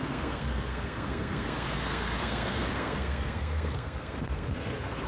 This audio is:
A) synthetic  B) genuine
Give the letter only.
A